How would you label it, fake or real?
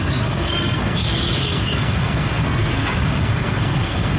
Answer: fake